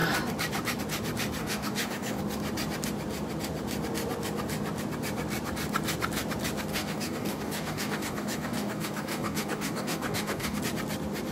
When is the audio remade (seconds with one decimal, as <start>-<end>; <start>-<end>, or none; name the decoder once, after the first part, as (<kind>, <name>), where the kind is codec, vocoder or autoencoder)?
1.4-2.2 (codec, DAC); 6.7-10.6

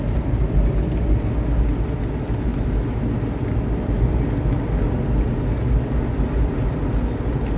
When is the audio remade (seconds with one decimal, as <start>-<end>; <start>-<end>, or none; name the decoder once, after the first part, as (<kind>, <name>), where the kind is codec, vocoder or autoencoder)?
none

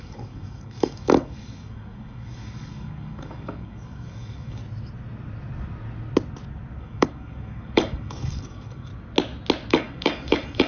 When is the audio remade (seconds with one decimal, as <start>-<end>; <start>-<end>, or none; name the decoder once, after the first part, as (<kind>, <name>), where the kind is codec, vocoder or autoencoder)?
0.0-4.6 (codec, DAC); 6.8-8.9; 9.7-10.7

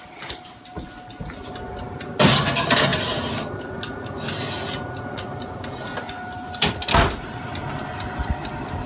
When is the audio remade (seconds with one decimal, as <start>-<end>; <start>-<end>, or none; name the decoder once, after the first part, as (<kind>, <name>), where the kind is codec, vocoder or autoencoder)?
none

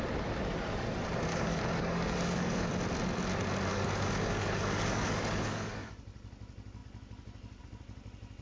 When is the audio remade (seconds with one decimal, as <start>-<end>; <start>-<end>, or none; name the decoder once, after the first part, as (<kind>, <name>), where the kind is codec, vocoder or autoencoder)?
1.3-2.7 (codec, DAC); 3.7-5.9

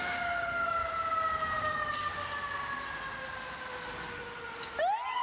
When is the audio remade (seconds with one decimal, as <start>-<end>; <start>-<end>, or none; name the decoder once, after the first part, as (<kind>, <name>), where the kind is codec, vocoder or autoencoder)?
0.0-0.8 (codec, DAC); 1.6-2.1

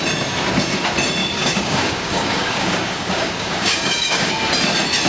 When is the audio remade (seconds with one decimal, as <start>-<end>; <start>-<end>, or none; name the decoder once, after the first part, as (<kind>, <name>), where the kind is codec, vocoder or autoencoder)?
1.2-4.3 (codec, DAC)